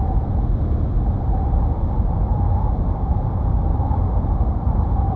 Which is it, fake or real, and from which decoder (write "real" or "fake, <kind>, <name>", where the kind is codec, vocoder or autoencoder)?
real